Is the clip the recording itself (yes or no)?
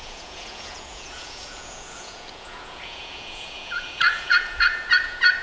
no